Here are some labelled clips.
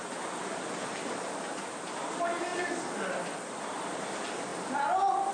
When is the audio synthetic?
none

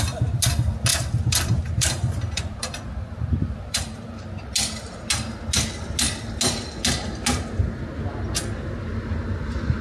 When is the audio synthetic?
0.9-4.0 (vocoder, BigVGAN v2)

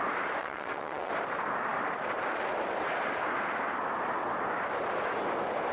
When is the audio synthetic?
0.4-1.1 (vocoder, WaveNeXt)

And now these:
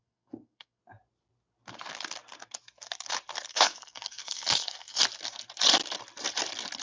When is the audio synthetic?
0.0-0.8 (codec, SNAC); 3.5-5.0

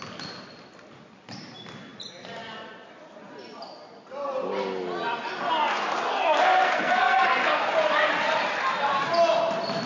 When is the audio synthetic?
6.1-7.7 (codec, SNAC)

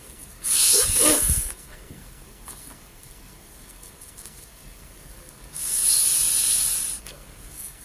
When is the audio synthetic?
0.0-5.8 (codec, SNAC); 7.0-7.8

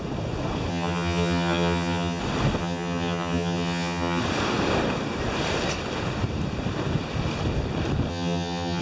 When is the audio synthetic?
0.7-2.2 (vocoder, HiFi-GAN); 2.6-4.2; 8.1-8.8